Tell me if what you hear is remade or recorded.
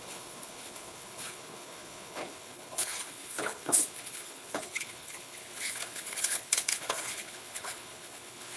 remade